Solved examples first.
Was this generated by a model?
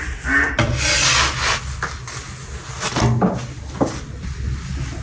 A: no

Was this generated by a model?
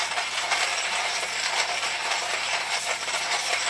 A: yes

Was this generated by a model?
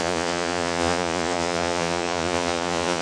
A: yes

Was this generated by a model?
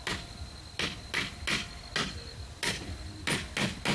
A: no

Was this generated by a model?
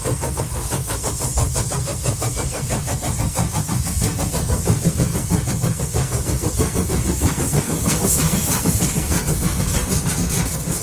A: yes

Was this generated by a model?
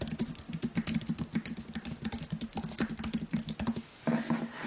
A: no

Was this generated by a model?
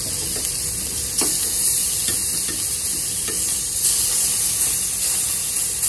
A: no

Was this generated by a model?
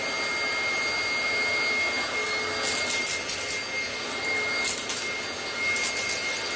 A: no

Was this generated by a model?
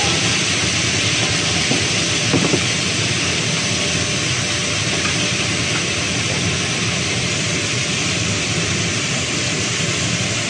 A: yes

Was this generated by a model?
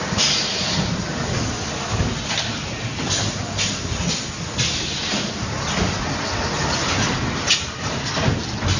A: no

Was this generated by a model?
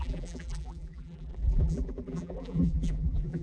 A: yes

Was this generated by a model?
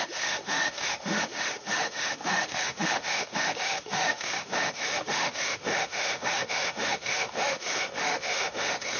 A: yes